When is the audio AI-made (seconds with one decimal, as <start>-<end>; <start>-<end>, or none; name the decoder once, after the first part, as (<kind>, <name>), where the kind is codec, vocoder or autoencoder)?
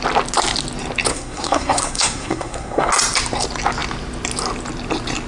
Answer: 1.1-2.9 (codec, SNAC)